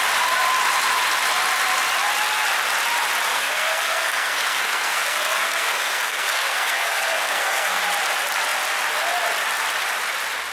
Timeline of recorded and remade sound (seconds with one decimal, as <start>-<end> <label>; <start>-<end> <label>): 0.0-3.3 recorded; 3.3-7.8 remade; 7.8-10.5 recorded